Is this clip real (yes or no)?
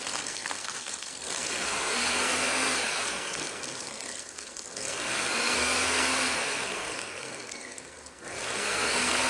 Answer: no